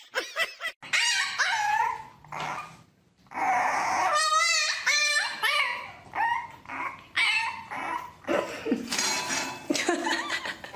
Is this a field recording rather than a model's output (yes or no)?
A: yes